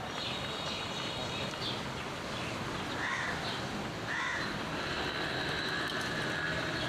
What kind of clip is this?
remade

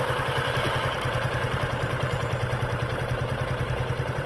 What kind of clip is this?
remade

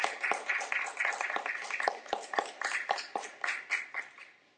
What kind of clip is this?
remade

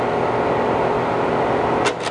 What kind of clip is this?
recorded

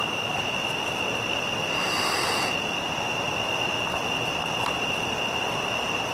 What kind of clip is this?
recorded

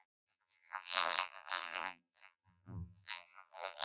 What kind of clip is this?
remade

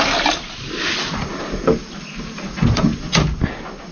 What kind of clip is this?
recorded